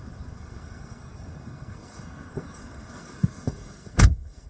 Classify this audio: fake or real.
fake